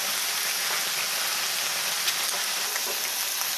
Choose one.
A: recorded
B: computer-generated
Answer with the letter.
A